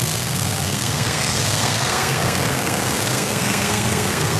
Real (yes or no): no